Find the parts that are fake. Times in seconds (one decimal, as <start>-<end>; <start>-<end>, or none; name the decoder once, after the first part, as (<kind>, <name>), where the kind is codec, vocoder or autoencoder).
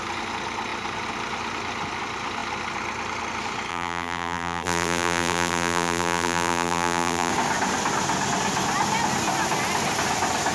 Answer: 3.7-7.3 (vocoder, BigVGAN v2)